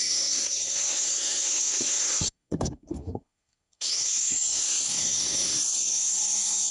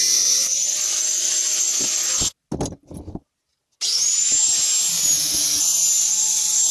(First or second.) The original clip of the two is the second